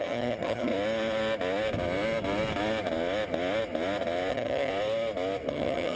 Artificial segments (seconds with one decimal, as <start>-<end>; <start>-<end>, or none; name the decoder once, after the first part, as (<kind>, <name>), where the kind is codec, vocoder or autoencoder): 0.0-0.7 (vocoder, HiFi-GAN); 4.3-4.7; 5.5-6.0